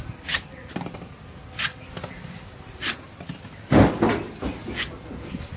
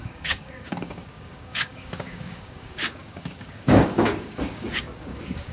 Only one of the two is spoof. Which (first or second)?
second